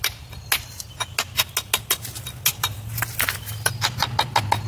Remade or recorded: recorded